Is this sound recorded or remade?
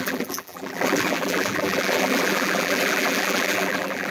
remade